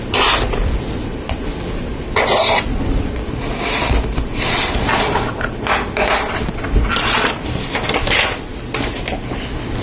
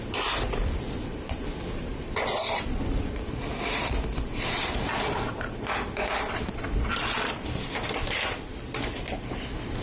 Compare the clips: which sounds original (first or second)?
first